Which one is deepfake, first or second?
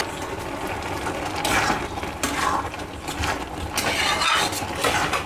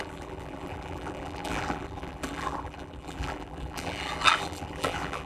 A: second